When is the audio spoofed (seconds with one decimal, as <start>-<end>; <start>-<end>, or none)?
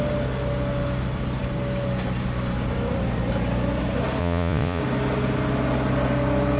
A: 4.2-4.8